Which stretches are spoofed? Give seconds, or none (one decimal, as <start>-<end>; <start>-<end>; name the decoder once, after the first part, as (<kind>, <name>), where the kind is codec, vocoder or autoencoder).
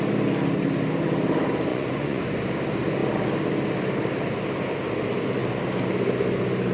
1.7-2.2 (vocoder, Vocos)